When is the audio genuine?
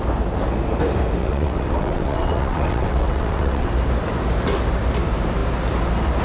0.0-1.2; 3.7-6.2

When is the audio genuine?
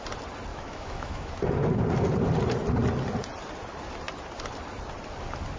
0.0-0.5; 1.3-5.6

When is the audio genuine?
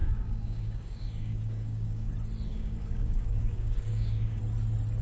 2.1-2.5; 4.4-5.0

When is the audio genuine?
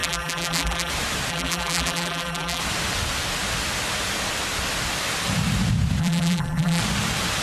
0.9-1.3; 2.6-6.0; 6.8-7.4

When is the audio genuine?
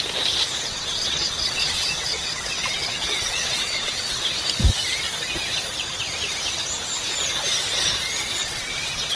0.0-0.7; 4.2-8.4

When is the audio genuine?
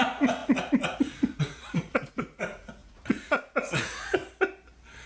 4.2-5.1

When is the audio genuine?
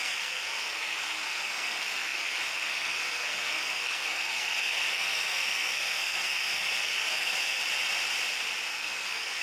7.6-8.7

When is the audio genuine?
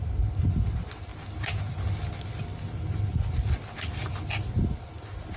0.0-5.4